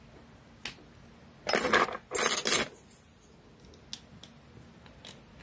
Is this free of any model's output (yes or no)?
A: yes